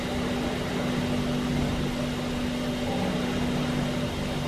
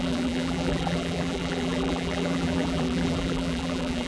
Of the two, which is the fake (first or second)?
second